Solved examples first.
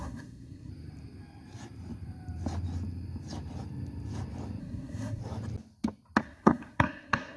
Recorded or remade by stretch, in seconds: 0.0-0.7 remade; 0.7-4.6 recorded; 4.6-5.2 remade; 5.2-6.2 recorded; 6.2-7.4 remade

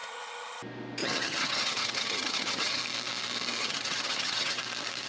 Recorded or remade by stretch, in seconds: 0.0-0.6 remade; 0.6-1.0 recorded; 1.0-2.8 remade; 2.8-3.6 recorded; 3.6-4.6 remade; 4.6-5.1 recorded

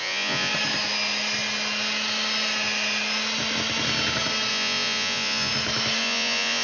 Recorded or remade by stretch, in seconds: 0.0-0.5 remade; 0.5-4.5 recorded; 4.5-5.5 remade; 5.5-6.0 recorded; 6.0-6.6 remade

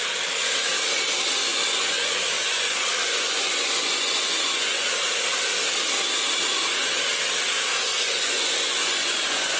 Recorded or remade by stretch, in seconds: 0.0-1.4 recorded; 1.4-4.9 remade; 4.9-7.9 recorded; 7.9-9.6 remade

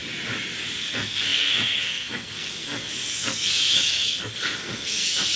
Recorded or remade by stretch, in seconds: 0.0-0.8 recorded; 0.8-5.4 remade